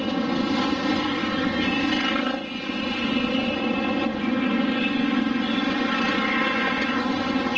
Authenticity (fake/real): fake